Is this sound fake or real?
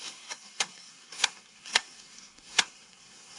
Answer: fake